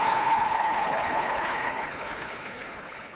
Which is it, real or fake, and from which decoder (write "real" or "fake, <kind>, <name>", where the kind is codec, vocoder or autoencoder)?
fake, codec, HILCodec